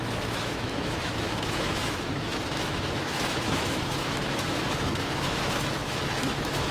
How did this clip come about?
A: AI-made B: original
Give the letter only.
A